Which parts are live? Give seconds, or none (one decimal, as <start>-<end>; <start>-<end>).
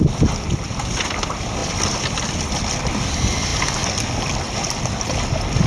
0.0-5.7